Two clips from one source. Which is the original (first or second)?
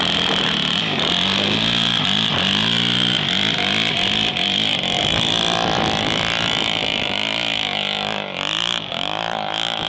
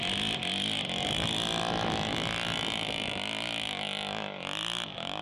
second